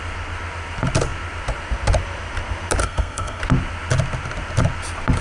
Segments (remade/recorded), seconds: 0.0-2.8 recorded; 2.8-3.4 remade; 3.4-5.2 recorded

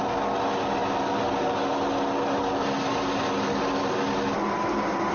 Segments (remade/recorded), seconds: 0.0-5.1 recorded

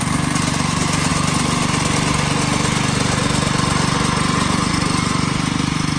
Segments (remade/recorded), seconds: 0.0-1.1 remade; 1.1-4.7 recorded; 4.7-6.0 remade